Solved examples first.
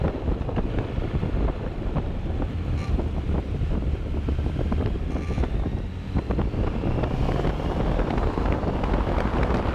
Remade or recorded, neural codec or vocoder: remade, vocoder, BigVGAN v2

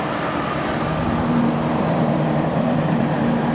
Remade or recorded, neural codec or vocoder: remade, vocoder, BigVGAN v2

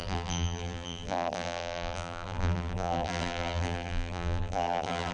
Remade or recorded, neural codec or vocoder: remade, vocoder, BigVGAN v2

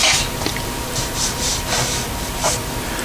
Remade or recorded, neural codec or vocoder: remade, vocoder, BigVGAN v2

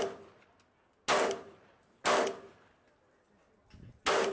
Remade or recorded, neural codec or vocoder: recorded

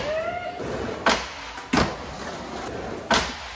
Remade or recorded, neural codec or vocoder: recorded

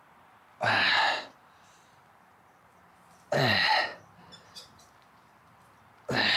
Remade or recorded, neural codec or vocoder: remade, vocoder, BigVGAN v2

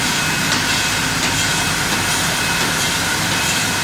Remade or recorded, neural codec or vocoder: recorded